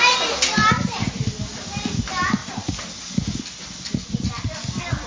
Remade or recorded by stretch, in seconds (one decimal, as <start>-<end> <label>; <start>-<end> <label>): 0.0-5.1 recorded